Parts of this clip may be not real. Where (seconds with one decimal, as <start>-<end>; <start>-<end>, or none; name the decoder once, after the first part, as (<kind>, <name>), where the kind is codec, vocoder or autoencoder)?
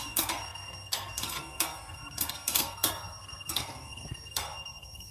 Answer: 0.0-5.1 (codec, SNAC)